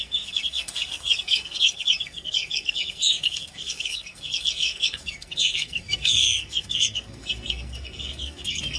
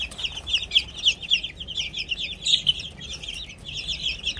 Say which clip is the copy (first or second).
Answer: first